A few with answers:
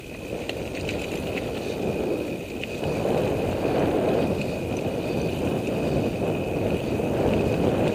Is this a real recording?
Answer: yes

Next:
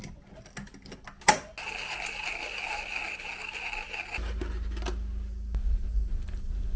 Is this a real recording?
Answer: yes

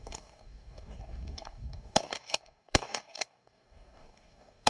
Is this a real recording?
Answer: no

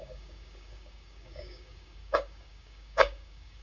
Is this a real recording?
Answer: no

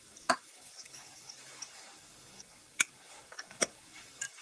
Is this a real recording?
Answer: no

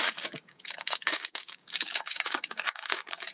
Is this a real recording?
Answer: no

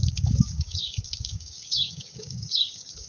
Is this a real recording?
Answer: no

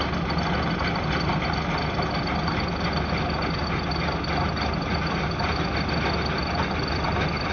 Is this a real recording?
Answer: yes